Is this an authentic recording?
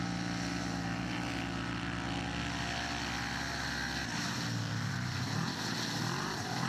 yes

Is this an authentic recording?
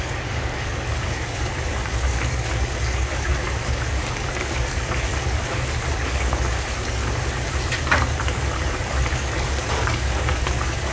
no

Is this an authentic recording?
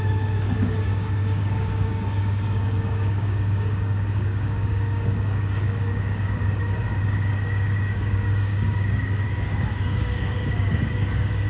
no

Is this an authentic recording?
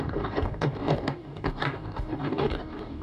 no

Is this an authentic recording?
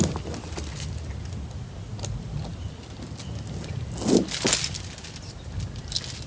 yes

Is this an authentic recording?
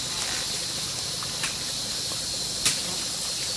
yes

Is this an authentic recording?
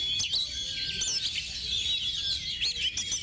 yes